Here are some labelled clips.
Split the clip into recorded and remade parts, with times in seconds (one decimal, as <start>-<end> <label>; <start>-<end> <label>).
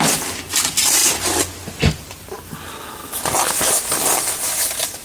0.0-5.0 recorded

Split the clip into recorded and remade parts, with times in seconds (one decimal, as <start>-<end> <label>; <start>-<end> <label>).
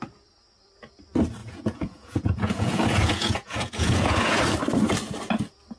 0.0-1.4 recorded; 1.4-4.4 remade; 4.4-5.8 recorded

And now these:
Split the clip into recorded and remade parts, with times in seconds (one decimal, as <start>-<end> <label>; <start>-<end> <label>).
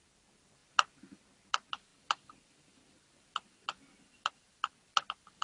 0.0-5.4 remade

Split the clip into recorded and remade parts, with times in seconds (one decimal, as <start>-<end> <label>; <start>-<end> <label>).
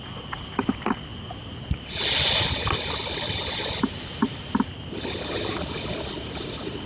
0.0-6.9 recorded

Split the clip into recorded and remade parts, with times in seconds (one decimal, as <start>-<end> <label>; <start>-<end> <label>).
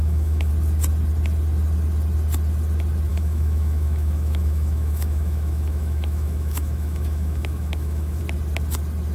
0.0-0.5 remade; 0.5-3.1 recorded; 3.1-8.2 remade; 8.2-9.1 recorded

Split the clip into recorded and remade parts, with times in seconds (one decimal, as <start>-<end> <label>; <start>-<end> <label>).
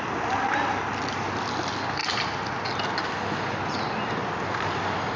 0.0-5.2 recorded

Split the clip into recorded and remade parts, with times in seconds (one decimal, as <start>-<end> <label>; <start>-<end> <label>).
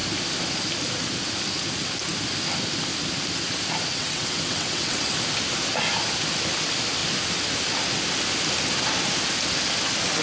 0.0-3.9 recorded; 3.9-5.1 remade; 5.1-10.2 recorded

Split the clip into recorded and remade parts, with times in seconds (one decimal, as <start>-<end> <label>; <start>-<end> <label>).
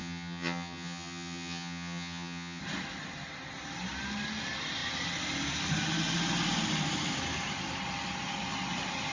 0.0-2.6 remade; 2.6-9.1 recorded